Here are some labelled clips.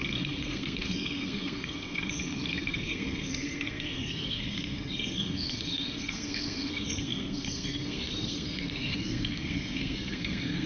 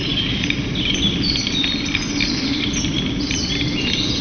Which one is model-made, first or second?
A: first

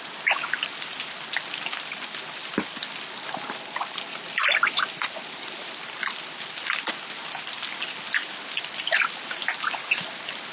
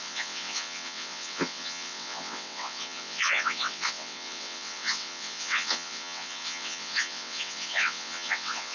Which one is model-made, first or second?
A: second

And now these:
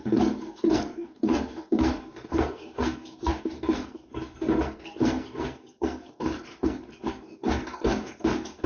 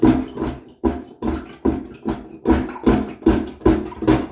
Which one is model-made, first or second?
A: first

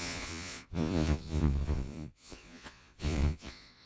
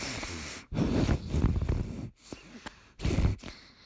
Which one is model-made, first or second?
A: first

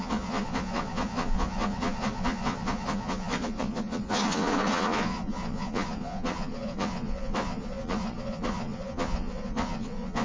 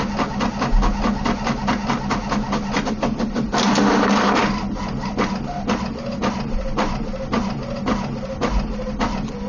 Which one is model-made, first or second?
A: first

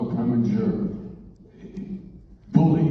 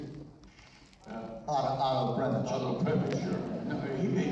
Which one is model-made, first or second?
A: first